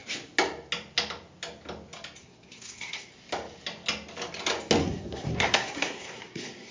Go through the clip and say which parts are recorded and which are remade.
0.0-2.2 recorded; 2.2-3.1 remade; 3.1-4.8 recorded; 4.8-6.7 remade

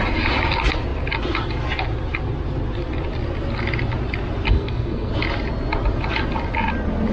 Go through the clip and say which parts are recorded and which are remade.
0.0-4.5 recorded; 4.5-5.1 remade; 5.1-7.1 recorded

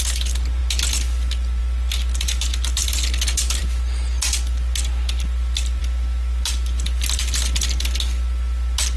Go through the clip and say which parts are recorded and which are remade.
0.0-9.0 recorded

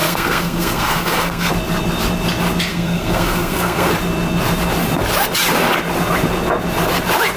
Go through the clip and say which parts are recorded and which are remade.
0.0-1.5 remade; 1.5-2.7 recorded; 2.7-3.9 remade; 3.9-7.4 recorded